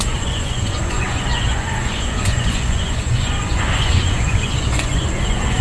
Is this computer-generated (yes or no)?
yes